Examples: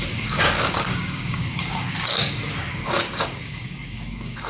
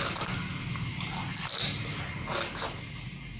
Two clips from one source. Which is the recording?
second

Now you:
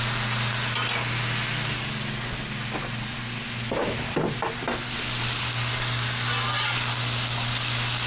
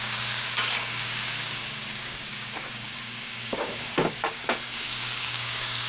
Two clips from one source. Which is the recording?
first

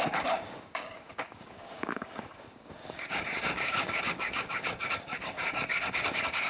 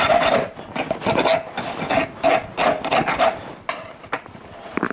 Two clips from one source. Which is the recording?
second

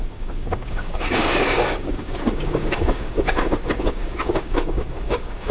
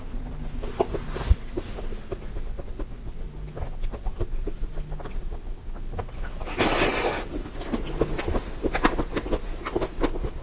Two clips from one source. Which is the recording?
second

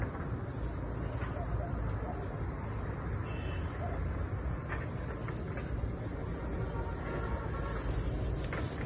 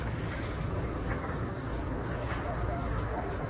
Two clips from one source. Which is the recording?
first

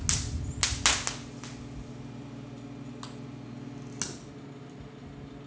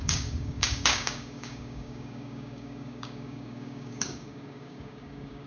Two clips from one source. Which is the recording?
first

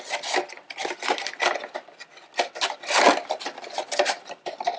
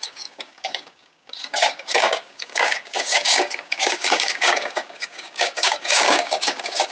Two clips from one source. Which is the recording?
first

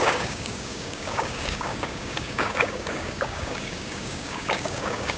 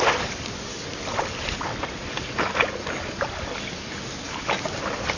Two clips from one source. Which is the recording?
second